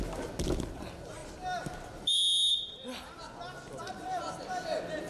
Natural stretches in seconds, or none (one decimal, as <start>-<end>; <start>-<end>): 0.0-5.1